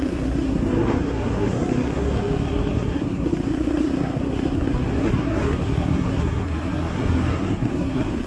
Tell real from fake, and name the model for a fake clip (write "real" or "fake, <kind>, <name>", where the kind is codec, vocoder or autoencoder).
fake, codec, SNAC